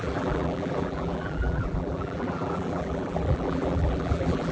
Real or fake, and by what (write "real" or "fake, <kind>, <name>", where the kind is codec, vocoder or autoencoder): fake, vocoder, BigVGAN v2